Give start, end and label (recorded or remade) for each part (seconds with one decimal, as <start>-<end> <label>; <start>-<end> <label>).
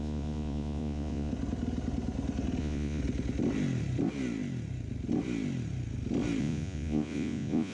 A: 0.0-1.3 remade; 1.3-2.6 recorded; 2.6-3.0 remade; 3.0-6.4 recorded; 6.4-7.7 remade